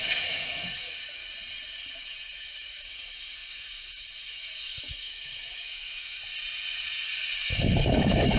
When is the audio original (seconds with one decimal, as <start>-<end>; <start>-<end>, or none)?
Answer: 1.2-1.9; 6.2-7.4